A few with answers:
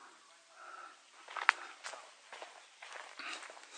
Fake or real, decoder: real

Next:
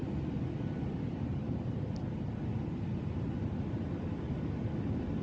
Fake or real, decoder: real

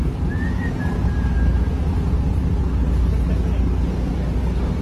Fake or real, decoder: real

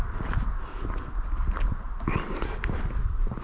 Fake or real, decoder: real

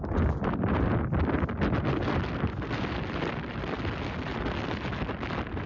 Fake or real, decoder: real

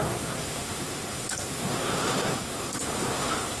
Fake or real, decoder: fake, codec, SNAC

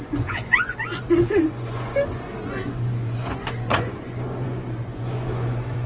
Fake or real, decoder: fake, vocoder, Vocos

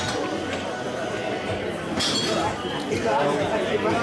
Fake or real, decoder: real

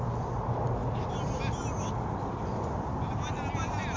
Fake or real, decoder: real